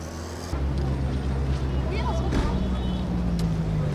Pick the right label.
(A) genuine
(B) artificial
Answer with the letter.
A